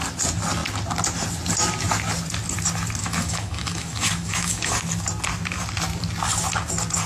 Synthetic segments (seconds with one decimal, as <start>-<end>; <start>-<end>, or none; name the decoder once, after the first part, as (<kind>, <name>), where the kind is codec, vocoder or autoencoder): 3.0-4.7 (autoencoder, DAC-VAE)